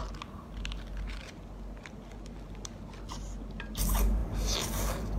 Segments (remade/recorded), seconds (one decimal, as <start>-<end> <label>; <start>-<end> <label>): 0.0-5.2 recorded